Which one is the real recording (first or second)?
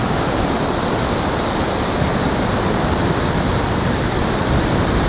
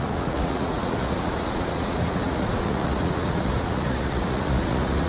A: first